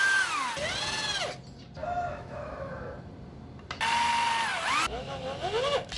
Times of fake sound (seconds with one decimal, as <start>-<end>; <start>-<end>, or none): 1.8-2.7